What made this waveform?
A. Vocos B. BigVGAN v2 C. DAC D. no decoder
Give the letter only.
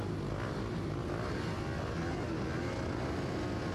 D